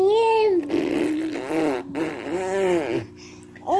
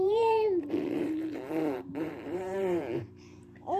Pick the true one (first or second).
first